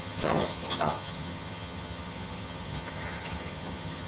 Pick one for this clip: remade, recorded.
remade